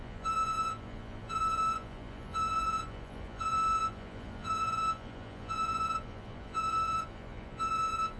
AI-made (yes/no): yes